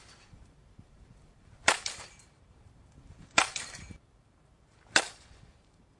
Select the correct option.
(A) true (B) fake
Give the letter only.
B